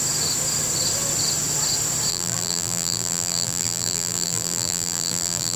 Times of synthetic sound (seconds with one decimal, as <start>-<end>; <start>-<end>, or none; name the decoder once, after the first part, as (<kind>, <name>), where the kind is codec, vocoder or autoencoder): 2.1-5.6 (vocoder, BigVGAN v2)